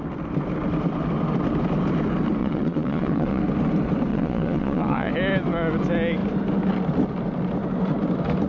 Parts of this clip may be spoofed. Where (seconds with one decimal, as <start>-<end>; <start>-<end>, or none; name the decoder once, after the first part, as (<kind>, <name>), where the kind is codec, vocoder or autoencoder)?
2.4-3.4 (vocoder, Vocos); 4.1-5.1